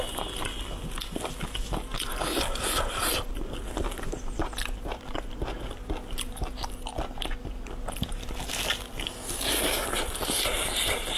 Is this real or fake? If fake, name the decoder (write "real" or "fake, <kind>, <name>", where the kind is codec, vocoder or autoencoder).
real